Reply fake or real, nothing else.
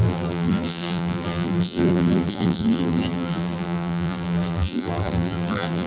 fake